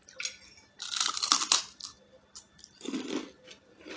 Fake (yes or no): no